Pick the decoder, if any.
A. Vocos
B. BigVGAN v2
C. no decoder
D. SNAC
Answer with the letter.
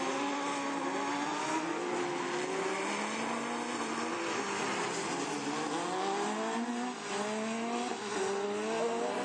C